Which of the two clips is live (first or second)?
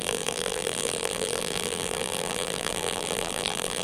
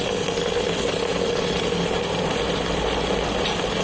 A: second